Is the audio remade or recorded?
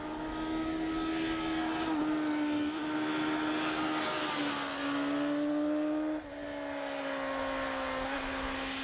recorded